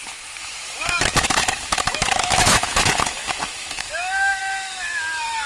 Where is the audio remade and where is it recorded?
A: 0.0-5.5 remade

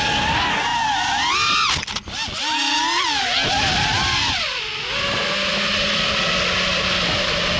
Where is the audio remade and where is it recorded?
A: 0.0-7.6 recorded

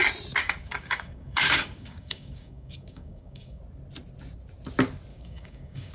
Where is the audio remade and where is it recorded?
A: 0.0-0.4 recorded; 0.4-3.6 remade; 3.6-5.1 recorded; 5.1-5.9 remade

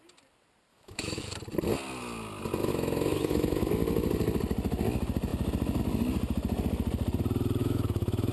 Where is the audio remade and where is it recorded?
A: 0.0-0.7 recorded; 0.7-1.2 remade; 1.2-2.6 recorded; 2.6-3.7 remade; 3.7-7.6 recorded; 7.6-8.3 remade

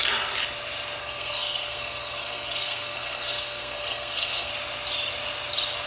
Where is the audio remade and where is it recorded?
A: 0.0-1.0 recorded; 1.0-4.5 remade; 4.5-5.9 recorded

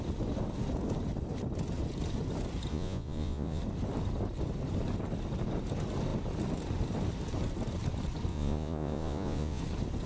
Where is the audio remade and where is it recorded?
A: 0.0-2.7 recorded; 2.7-3.6 remade; 3.6-8.3 recorded; 8.3-9.6 remade; 9.6-10.1 recorded